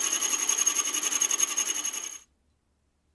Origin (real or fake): real